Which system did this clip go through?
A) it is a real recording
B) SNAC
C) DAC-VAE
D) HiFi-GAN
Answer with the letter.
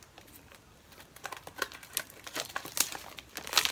A